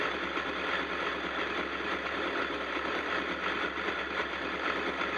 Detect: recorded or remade recorded